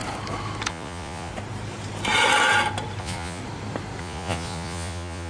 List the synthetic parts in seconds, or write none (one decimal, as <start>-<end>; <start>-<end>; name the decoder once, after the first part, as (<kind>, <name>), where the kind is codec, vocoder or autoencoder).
0.7-1.3 (vocoder, Vocos); 3.0-3.4; 4.0-5.3